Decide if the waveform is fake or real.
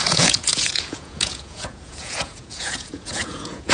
fake